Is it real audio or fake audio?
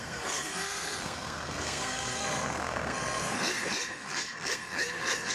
fake